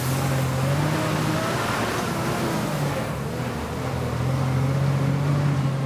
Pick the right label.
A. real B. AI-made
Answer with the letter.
A